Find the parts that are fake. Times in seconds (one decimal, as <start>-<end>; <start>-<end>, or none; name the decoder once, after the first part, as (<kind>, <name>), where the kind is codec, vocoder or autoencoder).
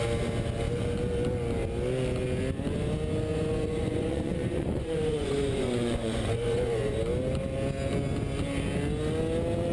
3.3-7.0 (vocoder, Vocos)